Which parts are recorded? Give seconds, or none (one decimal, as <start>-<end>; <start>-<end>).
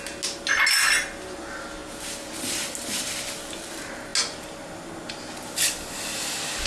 0.0-6.7